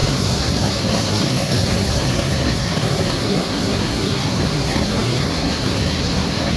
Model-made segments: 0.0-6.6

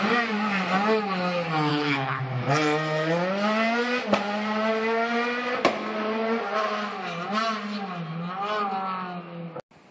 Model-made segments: 1.7-2.2

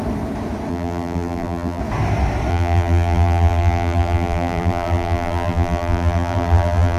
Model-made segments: 0.7-1.8; 2.5-7.0